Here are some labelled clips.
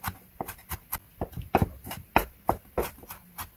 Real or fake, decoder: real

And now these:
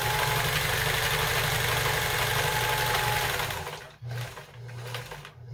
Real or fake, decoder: real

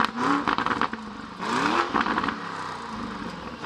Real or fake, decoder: real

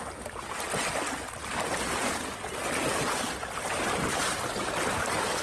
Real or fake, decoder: real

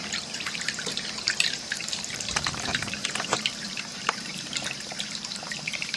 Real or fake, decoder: fake, vocoder, BigVGAN v2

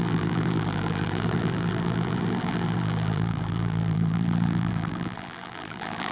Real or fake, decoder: fake, vocoder, BigVGAN v2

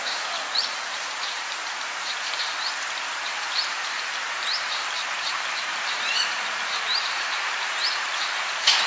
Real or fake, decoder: fake, vocoder, BigVGAN v2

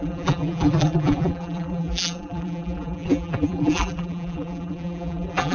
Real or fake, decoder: fake, vocoder, BigVGAN v2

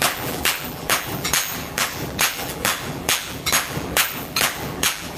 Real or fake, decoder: fake, vocoder, BigVGAN v2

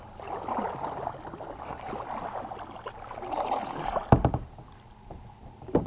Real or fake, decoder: real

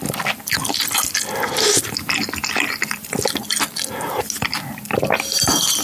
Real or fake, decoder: real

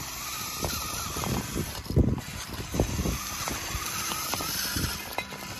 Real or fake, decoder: fake, vocoder, BigVGAN v2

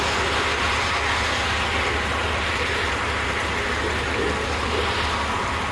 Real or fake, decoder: fake, vocoder, BigVGAN v2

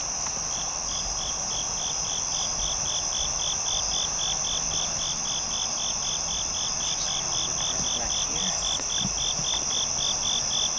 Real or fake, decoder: real